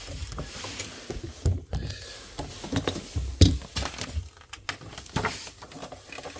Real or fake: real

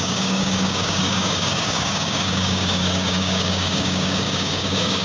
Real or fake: fake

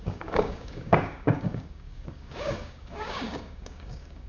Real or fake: fake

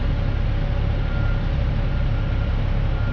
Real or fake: real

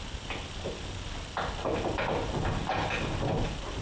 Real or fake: real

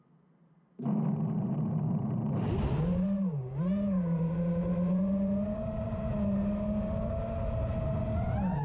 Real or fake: real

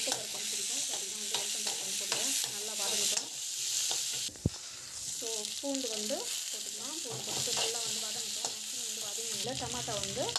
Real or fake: real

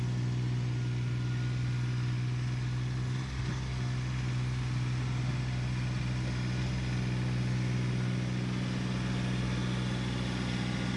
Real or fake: real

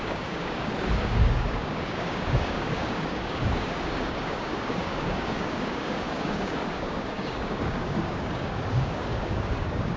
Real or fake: fake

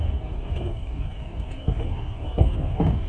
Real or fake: fake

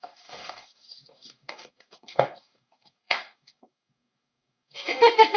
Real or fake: fake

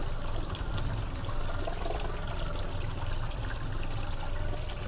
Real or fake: real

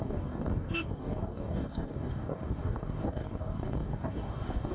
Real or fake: fake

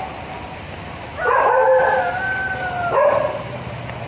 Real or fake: real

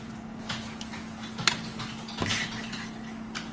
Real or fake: real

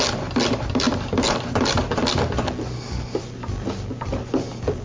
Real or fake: real